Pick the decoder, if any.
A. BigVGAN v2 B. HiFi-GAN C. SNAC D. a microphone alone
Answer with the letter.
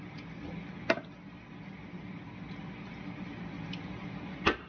D